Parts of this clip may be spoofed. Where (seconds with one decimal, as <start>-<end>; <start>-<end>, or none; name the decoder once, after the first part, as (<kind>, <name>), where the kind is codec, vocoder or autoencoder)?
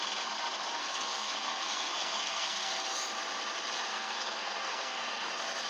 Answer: 0.8-2.7 (codec, SNAC); 3.9-5.3